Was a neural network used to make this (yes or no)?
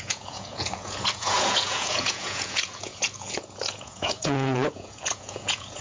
yes